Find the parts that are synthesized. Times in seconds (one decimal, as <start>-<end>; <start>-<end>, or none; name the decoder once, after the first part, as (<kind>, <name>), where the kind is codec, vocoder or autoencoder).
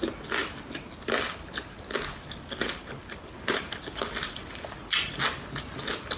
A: none